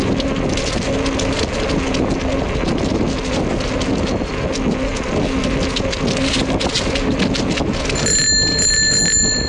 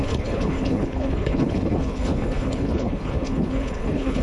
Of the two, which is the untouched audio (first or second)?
first